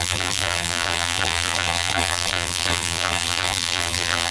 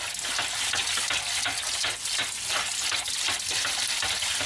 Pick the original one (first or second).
second